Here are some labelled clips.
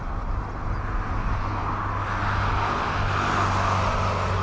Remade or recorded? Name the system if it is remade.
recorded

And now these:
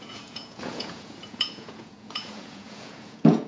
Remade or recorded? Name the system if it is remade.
remade, vocoder, Vocos